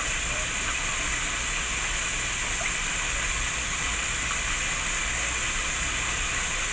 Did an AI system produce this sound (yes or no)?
no